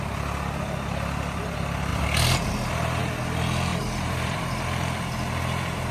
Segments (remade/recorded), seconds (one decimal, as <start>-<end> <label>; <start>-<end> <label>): 0.0-3.7 recorded; 3.7-4.7 remade; 4.7-5.9 recorded